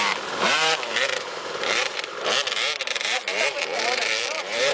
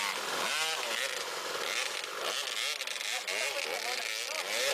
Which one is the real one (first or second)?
second